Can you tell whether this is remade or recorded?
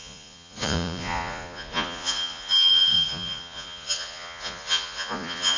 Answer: remade